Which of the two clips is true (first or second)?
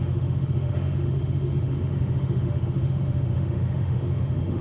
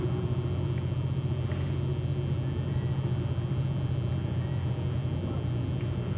second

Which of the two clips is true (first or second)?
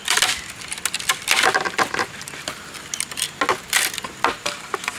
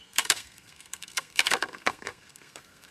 first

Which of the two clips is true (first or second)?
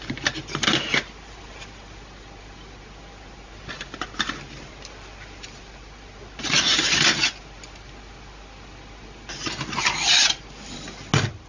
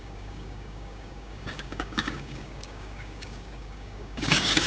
first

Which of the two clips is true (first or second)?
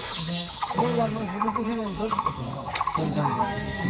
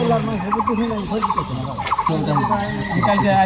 second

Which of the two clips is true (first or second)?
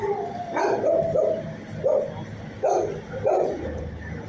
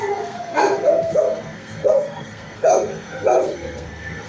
first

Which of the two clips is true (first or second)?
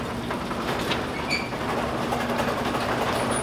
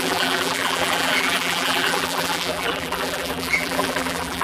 first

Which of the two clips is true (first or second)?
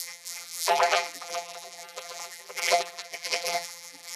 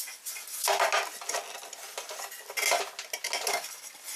second